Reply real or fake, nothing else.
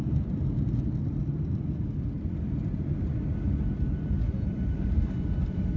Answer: real